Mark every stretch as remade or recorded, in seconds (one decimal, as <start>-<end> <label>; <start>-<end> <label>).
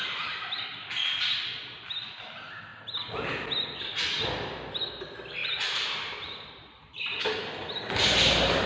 0.0-0.6 remade; 0.6-5.4 recorded; 5.4-7.2 remade; 7.2-8.7 recorded